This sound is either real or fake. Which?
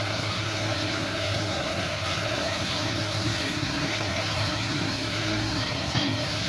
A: fake